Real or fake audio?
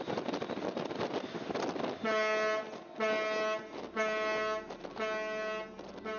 real